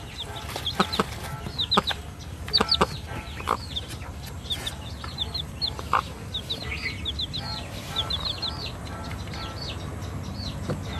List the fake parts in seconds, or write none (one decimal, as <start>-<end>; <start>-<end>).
5.4-6.6